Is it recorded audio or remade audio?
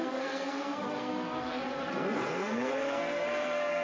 remade